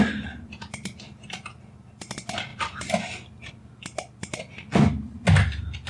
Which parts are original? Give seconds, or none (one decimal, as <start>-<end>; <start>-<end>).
0.0-2.5; 3.5-5.9